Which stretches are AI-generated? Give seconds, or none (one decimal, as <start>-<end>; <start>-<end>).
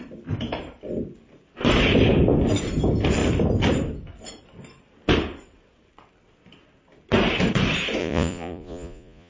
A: 8.0-9.3